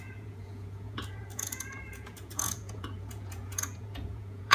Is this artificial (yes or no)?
yes